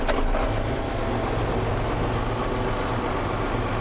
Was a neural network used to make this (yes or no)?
no